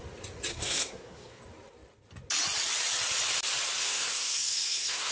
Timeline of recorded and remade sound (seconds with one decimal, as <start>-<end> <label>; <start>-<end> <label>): 0.0-0.5 recorded; 0.5-1.4 remade; 1.4-3.8 recorded; 3.8-5.1 remade